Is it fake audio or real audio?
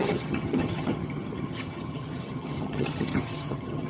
fake